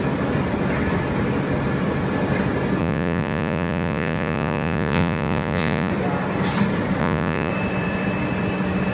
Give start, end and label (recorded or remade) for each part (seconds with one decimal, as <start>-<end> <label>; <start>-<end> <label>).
0.0-2.8 recorded; 2.8-5.9 remade; 5.9-7.0 recorded; 7.0-7.5 remade; 7.5-8.9 recorded